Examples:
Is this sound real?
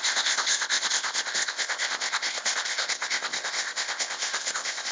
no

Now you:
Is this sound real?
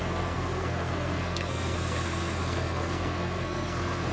no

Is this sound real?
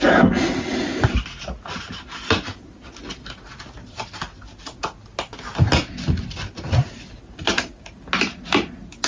yes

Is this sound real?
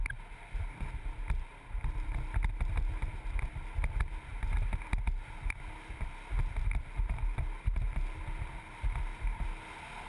yes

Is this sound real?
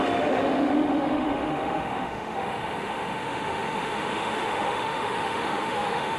no